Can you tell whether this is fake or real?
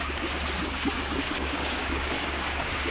fake